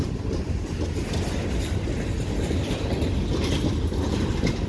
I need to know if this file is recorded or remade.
recorded